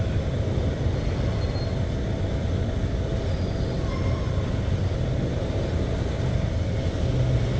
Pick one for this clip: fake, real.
real